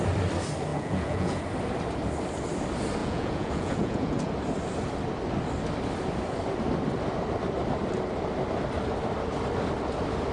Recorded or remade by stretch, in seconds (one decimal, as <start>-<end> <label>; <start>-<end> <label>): 0.0-0.7 recorded; 0.7-1.4 remade; 1.4-3.0 recorded; 3.0-4.3 remade; 4.3-10.3 recorded